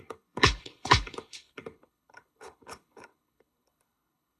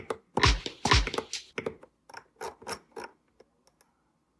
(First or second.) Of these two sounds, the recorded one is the second